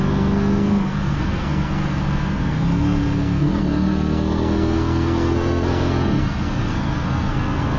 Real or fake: fake